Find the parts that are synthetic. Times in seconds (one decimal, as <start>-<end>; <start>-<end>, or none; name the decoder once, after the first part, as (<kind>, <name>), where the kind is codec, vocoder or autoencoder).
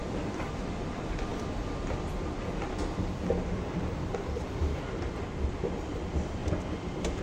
0.0-6.4 (vocoder, BigVGAN v2)